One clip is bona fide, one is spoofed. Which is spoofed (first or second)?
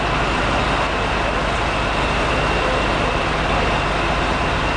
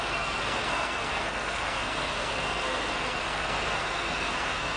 second